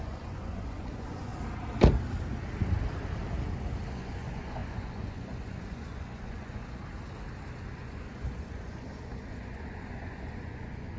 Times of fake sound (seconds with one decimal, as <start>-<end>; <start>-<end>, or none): 0.0-1.3; 3.9-6.8; 7.7-11.0